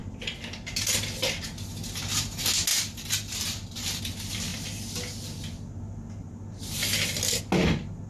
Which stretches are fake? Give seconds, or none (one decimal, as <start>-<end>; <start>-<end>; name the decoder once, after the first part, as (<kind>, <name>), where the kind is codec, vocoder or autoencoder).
2.7-4.0 (vocoder, BigVGAN v2)